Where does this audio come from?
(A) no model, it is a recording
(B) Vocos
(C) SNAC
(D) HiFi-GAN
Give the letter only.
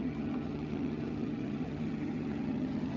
D